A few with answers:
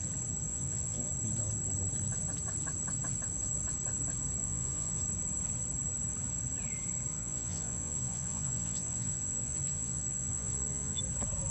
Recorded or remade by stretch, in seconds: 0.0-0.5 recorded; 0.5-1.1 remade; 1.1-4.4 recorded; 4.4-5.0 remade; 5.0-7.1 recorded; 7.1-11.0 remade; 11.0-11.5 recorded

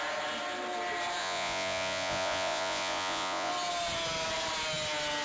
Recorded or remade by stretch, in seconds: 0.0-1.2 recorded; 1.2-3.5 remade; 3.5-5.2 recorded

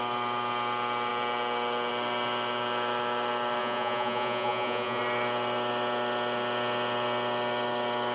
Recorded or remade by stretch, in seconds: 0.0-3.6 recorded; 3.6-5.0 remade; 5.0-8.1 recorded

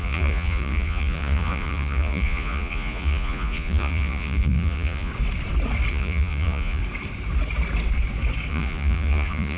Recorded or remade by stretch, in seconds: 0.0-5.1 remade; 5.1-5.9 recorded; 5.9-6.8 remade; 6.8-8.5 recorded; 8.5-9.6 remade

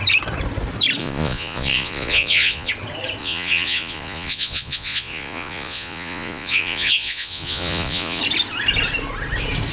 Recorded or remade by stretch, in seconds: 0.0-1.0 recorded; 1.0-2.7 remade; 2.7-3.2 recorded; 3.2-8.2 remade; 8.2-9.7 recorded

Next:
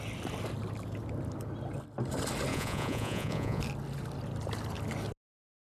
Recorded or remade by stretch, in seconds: 0.0-2.5 recorded; 2.5-3.6 remade; 3.6-5.7 recorded

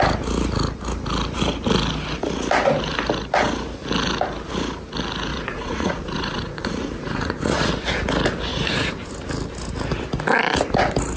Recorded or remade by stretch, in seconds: 0.0-5.3 recorded; 5.3-7.7 remade; 7.7-8.5 recorded; 8.5-9.1 remade; 9.1-11.2 recorded

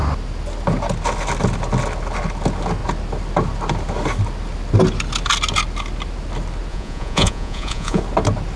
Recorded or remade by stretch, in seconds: 0.0-6.7 recorded; 6.7-8.0 remade; 8.0-8.6 recorded